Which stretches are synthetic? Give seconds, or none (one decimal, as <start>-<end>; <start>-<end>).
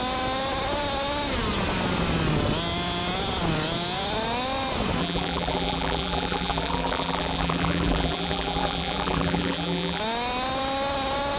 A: 5.0-10.0